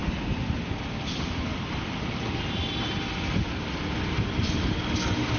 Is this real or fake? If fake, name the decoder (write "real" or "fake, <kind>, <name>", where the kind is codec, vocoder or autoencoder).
real